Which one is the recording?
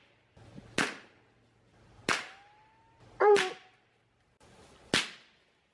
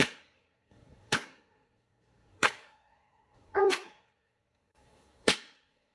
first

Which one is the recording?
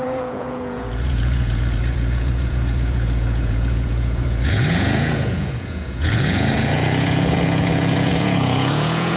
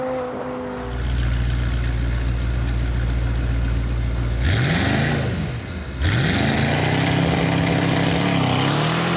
second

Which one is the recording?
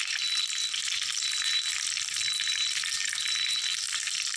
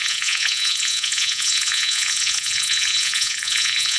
first